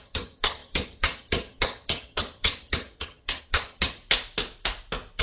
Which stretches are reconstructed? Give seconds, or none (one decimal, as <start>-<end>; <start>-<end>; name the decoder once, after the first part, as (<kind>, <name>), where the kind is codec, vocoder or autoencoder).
0.0-4.0 (vocoder, HiFi-GAN)